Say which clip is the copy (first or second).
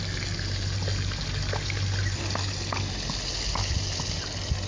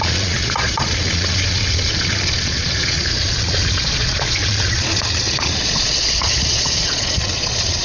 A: second